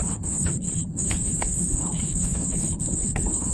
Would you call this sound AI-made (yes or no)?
yes